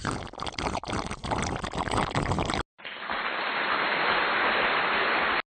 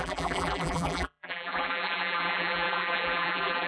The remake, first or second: second